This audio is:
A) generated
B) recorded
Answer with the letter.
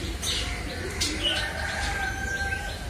A